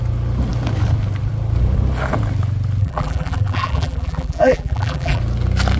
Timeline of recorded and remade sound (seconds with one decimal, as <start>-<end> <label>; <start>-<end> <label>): 0.0-2.8 recorded; 2.8-5.2 remade; 5.2-5.8 recorded